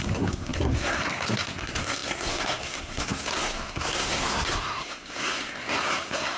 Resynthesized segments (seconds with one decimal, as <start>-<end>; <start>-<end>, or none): 0.0-6.4